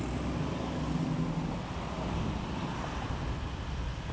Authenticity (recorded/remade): recorded